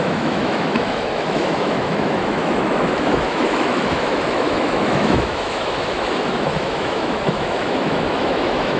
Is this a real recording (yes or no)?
no